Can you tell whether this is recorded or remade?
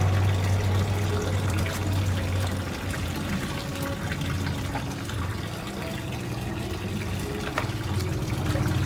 recorded